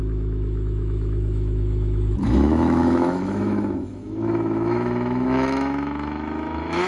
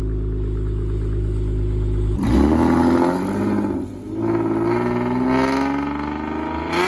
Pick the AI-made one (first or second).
first